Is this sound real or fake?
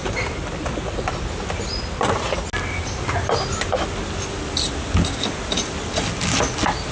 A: real